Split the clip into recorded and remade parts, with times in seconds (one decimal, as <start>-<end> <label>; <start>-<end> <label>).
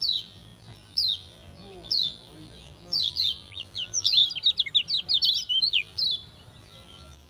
0.0-4.2 remade; 4.2-5.6 recorded; 5.6-6.0 remade; 6.0-6.6 recorded; 6.6-7.3 remade